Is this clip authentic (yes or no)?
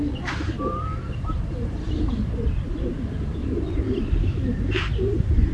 no